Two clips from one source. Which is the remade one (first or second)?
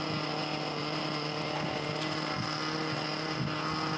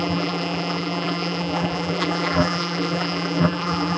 second